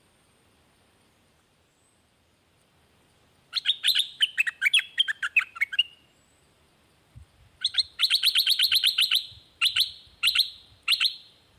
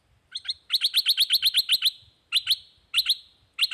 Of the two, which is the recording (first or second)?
second